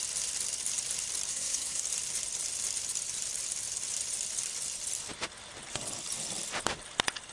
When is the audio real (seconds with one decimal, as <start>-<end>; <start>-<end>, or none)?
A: 0.0-1.3; 1.8-7.3